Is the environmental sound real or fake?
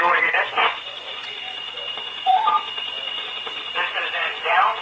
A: fake